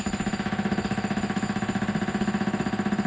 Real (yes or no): yes